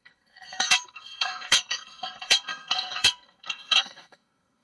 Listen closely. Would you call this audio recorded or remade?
remade